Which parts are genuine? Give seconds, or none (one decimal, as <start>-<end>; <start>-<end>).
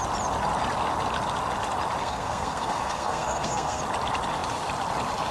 0.0-2.0; 3.8-5.3